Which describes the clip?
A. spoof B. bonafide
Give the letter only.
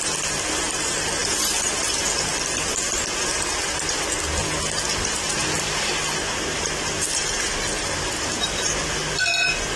B